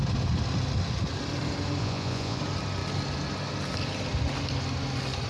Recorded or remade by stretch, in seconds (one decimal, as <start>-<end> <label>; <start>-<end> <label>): 0.0-1.8 recorded; 1.8-2.4 remade; 2.4-5.3 recorded